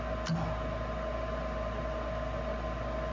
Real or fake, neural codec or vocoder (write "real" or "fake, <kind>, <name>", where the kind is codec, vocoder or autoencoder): real